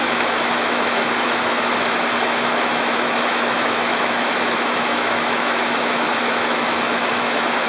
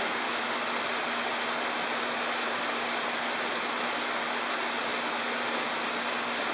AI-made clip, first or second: first